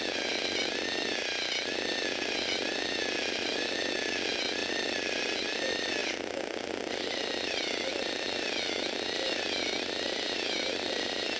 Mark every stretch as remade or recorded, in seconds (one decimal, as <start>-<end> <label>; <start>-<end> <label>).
0.0-4.6 recorded; 4.6-5.2 remade; 5.2-6.0 recorded; 6.0-7.9 remade; 7.9-11.4 recorded